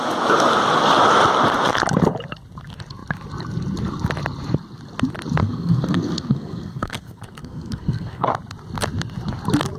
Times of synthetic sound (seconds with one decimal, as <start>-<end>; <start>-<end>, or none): 5.4-8.3